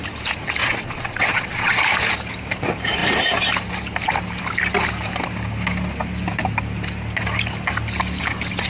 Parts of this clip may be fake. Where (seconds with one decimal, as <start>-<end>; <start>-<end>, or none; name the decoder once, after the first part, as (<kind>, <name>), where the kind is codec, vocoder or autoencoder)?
0.6-1.8 (vocoder, Vocos)